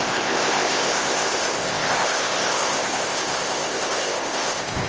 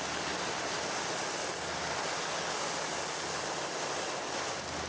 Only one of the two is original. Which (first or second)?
second